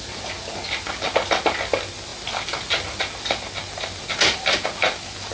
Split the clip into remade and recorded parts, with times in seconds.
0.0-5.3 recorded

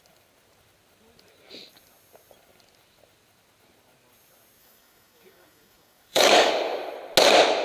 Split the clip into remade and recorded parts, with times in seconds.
0.0-4.6 recorded; 4.6-6.5 remade; 6.5-7.6 recorded

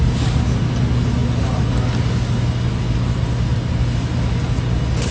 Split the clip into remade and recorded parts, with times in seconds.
0.0-5.1 recorded